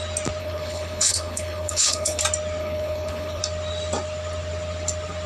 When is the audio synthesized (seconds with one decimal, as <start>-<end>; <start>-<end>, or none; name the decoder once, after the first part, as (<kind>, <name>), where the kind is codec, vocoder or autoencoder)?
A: 0.4-2.2 (codec, HILCodec); 2.6-3.4